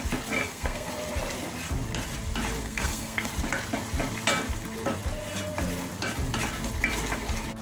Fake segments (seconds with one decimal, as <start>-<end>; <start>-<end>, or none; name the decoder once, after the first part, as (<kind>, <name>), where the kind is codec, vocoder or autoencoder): 0.4-0.9 (codec, SNAC); 2.6-3.3